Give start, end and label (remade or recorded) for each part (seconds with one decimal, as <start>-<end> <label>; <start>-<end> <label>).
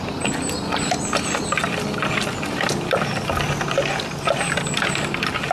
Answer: 0.0-5.5 recorded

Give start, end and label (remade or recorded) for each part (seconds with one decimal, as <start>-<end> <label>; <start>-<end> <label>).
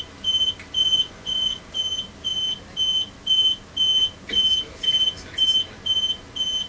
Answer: 0.0-0.8 recorded; 0.8-1.6 remade; 1.6-6.7 recorded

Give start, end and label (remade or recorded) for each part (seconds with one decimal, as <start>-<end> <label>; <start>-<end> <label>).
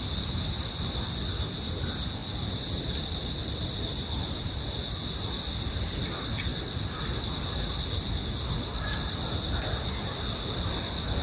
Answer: 0.0-11.2 recorded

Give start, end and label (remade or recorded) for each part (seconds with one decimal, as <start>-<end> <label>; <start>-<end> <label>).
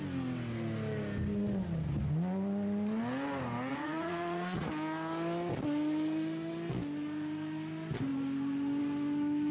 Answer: 0.0-3.7 recorded; 3.7-4.7 remade; 4.7-9.5 recorded